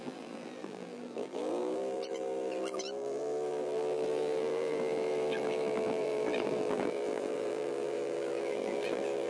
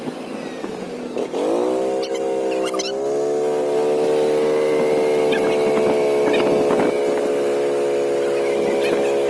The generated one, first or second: first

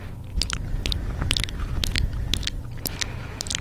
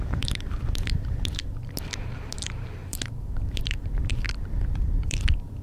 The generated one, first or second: second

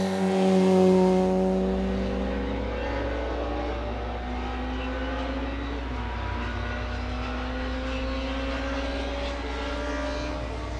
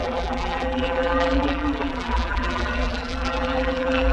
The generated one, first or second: second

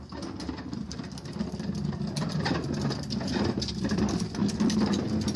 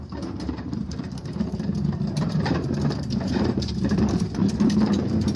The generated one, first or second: second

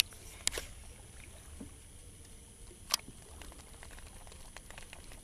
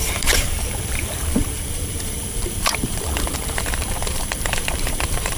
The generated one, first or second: second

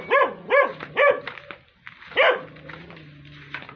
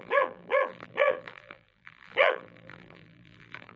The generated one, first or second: second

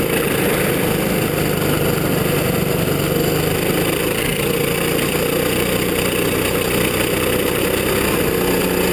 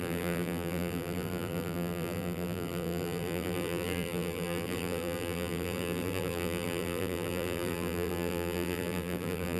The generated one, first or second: second